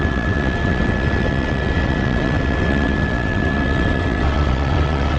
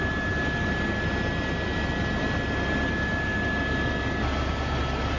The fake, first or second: first